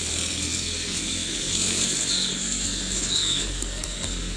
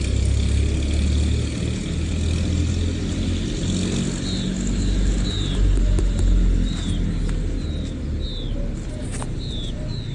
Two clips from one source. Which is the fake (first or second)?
first